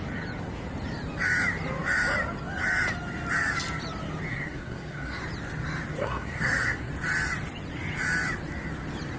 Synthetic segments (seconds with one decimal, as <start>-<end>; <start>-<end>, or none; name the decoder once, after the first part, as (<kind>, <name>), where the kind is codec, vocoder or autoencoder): 4.3-5.2 (codec, SNAC); 6.0-6.9